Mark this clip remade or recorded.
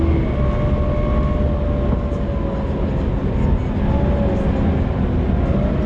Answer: recorded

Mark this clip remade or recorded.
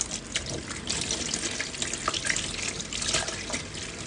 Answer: recorded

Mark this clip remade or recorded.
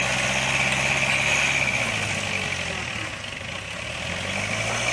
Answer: recorded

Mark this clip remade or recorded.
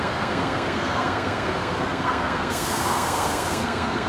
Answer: remade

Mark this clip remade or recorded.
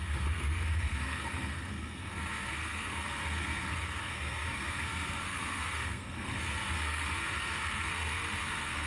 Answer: remade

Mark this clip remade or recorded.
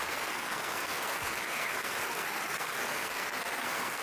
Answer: remade